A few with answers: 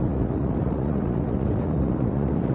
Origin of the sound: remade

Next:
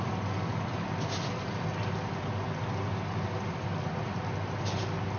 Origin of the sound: recorded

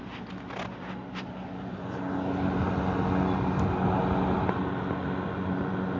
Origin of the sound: recorded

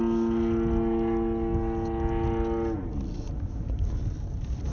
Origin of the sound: recorded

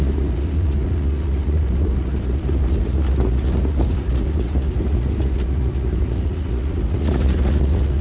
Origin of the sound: remade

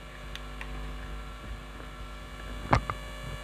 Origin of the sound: recorded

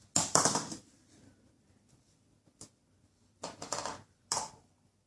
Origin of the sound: remade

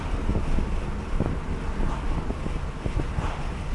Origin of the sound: recorded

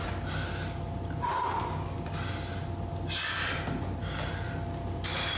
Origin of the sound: recorded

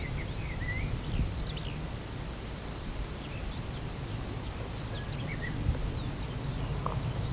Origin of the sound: recorded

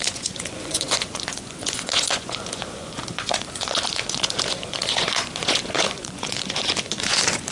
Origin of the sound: remade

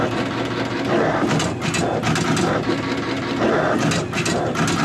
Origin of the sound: recorded